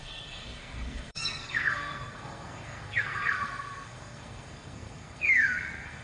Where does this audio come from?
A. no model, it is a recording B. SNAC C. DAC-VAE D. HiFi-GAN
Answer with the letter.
B